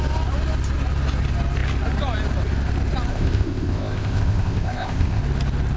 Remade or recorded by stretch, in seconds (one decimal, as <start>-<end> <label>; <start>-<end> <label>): 0.0-3.1 recorded; 3.1-5.2 remade; 5.2-5.8 recorded